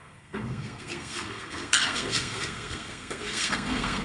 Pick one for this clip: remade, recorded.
remade